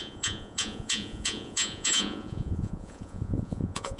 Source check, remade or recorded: remade